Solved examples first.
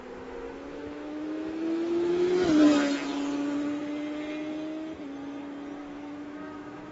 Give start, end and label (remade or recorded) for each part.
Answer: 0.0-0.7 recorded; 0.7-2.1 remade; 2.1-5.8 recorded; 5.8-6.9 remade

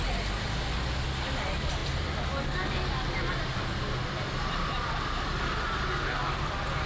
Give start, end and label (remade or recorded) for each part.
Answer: 0.0-6.9 recorded

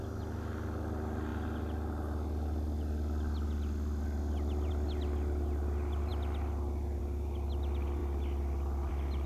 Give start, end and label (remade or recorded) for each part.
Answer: 0.0-9.3 recorded